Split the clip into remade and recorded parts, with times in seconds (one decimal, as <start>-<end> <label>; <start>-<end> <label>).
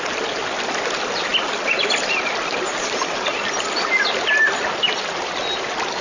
0.0-6.0 recorded